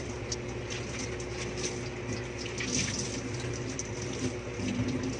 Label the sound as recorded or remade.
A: recorded